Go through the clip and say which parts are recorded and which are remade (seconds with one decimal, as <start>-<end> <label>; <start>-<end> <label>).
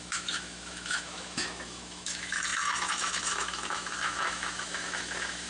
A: 0.0-5.5 remade